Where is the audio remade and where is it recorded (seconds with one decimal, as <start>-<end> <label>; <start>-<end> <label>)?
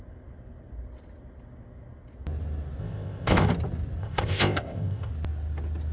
0.0-2.8 recorded; 2.8-3.5 remade; 3.5-4.0 recorded; 4.0-5.1 remade; 5.1-5.9 recorded